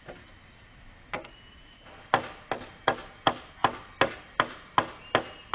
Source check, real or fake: real